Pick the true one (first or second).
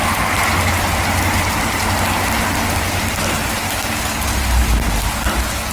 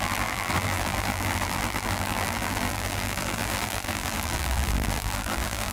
first